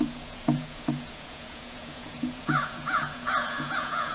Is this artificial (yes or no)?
yes